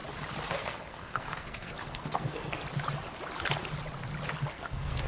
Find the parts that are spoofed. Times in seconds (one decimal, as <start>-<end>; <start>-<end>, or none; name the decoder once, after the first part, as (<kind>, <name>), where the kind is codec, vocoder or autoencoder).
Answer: 0.5-2.6 (codec, SNAC); 4.5-5.1